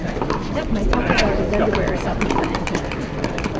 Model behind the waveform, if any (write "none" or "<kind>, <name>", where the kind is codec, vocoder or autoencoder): none